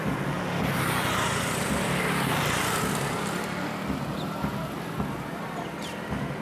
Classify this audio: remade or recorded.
recorded